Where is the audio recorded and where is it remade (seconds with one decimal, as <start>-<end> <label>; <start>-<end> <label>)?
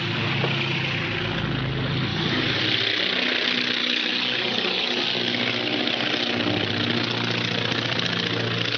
0.0-2.1 recorded; 2.1-2.6 remade; 2.6-3.8 recorded; 3.8-5.0 remade; 5.0-8.8 recorded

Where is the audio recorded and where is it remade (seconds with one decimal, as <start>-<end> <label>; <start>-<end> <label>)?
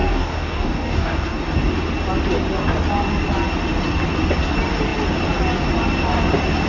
0.0-1.4 remade; 1.4-6.7 recorded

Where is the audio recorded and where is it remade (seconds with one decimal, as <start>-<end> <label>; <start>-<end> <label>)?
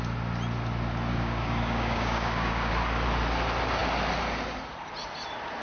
0.0-1.1 recorded; 1.1-2.7 remade; 2.7-5.6 recorded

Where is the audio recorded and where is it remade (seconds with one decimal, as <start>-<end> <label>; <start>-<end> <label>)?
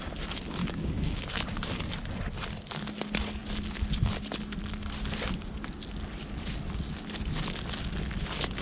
0.0-0.6 recorded; 0.6-1.4 remade; 1.4-8.6 recorded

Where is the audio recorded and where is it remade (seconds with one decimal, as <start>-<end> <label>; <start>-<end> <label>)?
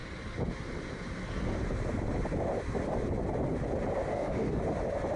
0.0-4.1 recorded; 4.1-4.6 remade; 4.6-5.2 recorded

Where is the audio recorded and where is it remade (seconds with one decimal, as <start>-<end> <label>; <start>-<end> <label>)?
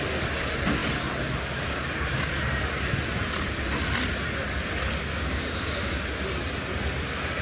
0.0-5.1 recorded; 5.1-6.0 remade; 6.0-7.4 recorded